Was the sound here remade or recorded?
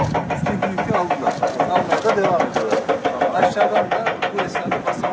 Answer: recorded